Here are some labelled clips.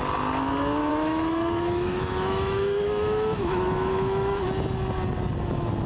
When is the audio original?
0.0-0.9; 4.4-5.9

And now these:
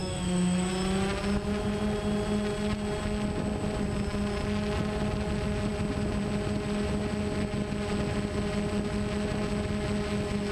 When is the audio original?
0.7-10.5

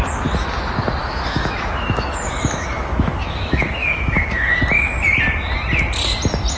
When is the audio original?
0.0-1.0; 4.6-6.6

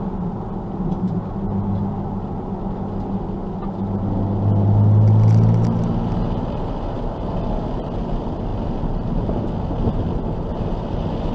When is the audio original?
0.0-11.3